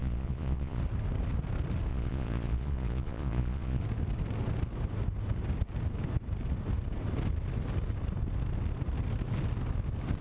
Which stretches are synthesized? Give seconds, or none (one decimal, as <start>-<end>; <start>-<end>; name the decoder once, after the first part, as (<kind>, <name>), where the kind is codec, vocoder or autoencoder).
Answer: 0.0-0.8 (vocoder, Vocos); 1.9-3.8